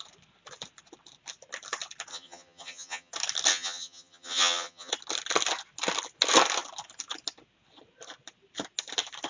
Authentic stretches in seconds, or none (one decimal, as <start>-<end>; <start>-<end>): 0.0-2.1; 3.1-3.5; 4.9-9.3